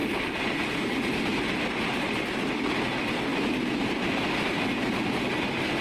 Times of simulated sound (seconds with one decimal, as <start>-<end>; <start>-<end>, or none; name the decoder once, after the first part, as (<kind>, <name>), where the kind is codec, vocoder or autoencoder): 0.0-1.1 (vocoder, BigVGAN v2); 3.3-4.1